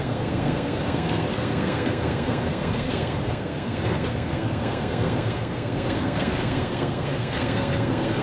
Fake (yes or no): yes